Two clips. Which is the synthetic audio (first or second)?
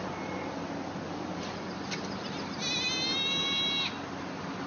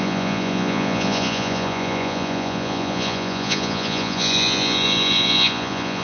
second